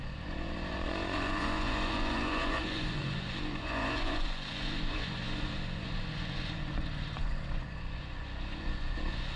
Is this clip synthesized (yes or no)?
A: yes